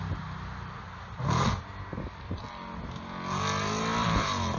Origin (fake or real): real